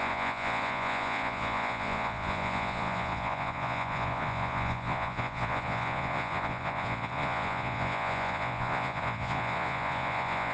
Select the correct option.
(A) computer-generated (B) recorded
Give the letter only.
A